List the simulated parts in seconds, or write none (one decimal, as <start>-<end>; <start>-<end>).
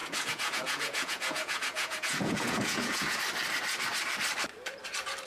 0.0-3.2